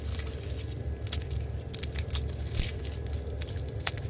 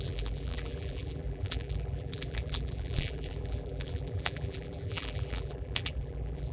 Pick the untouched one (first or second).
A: first